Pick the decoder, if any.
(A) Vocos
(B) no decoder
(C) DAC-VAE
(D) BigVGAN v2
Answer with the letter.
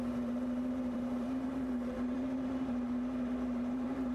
D